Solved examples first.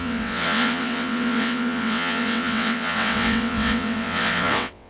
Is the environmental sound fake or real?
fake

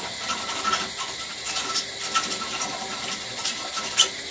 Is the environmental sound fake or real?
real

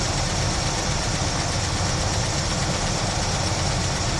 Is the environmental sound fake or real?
real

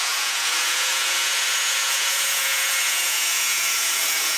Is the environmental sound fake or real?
fake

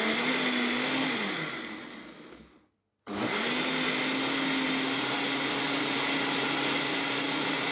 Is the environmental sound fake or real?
real